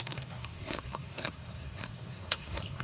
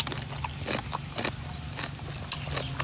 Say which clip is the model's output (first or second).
first